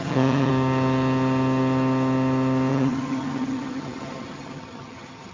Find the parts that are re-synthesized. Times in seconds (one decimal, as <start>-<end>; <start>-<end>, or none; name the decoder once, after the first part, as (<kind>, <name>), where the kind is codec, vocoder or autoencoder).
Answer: 0.0-0.5 (vocoder, HiFi-GAN); 2.7-5.3